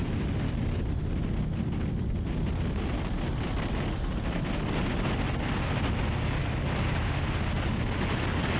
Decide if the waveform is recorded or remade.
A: recorded